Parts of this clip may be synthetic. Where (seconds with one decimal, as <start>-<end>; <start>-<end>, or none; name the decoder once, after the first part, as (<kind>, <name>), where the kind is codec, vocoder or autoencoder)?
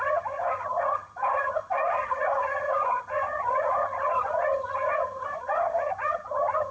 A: 0.0-6.7 (vocoder, HiFi-GAN)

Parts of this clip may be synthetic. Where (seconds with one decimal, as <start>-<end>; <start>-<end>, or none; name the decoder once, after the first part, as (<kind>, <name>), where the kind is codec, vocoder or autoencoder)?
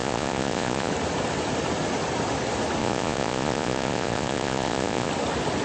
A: 0.0-0.9 (vocoder, Vocos); 2.8-5.1